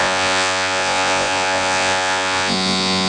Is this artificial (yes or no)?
yes